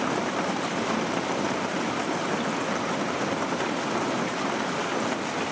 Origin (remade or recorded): recorded